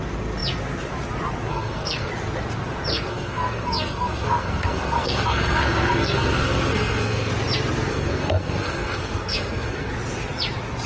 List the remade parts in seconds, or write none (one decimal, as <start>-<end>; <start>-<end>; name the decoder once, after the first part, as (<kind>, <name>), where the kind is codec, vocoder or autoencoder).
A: 1.5-2.1 (codec, SNAC); 2.9-7.3; 7.9-9.9